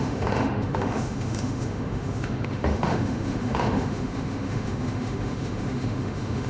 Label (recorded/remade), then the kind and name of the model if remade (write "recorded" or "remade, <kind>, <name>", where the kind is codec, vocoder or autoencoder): remade, autoencoder, DAC-VAE